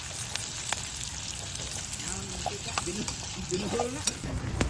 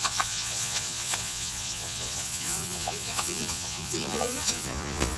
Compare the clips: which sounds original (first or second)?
first